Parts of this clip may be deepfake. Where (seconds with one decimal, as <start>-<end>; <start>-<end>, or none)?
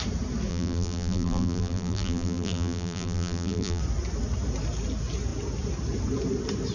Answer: 0.5-3.8